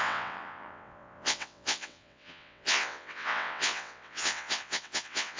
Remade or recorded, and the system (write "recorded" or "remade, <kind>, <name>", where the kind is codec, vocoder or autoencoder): remade, vocoder, WaveNeXt